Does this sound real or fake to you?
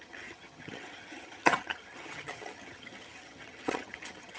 fake